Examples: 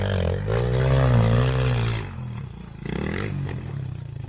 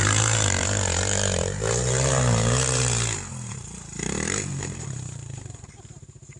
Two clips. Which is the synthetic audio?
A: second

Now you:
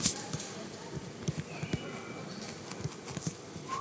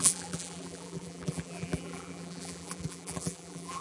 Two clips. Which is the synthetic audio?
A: second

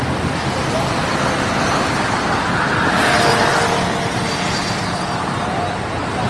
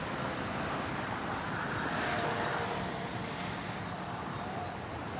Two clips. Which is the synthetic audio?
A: second